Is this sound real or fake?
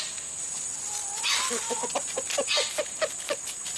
real